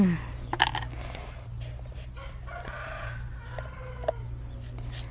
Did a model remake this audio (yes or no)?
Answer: no